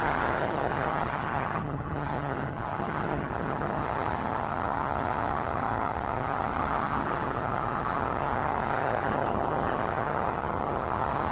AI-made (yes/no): yes